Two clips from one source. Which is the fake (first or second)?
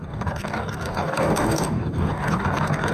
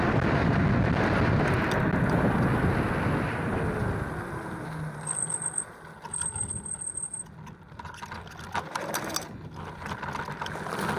first